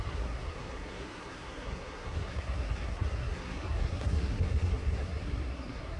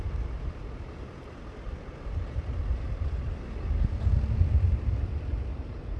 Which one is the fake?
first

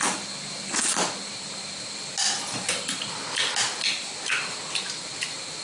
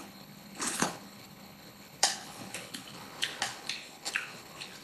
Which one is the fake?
second